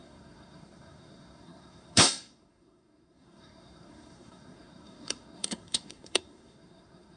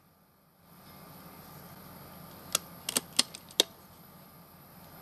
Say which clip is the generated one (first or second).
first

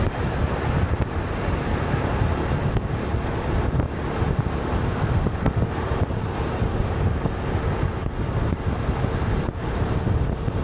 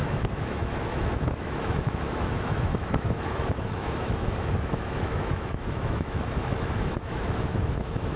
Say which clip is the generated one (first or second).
second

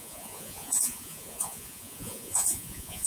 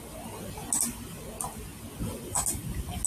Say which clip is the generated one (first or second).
first